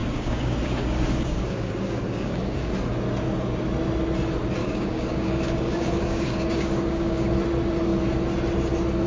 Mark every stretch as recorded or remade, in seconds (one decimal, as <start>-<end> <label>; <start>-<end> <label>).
0.0-2.7 remade; 2.7-4.6 recorded; 4.6-7.3 remade; 7.3-9.1 recorded